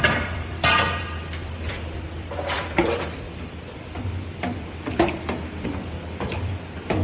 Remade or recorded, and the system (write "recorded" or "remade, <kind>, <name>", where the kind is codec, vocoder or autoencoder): remade, vocoder, BigVGAN v2